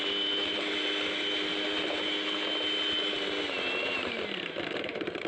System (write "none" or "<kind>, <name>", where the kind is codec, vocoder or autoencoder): none